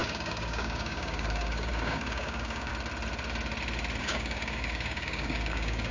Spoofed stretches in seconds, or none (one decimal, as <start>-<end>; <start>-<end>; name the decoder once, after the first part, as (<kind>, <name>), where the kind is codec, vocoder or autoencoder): 0.0-2.7 (codec, DAC); 4.0-5.9